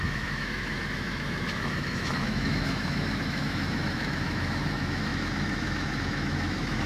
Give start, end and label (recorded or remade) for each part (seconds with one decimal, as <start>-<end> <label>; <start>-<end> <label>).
0.0-6.9 remade